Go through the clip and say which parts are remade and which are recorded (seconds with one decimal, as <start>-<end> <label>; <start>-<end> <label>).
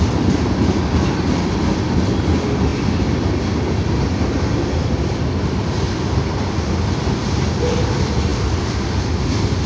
0.0-9.7 recorded